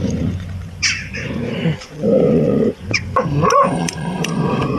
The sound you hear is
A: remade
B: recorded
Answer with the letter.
A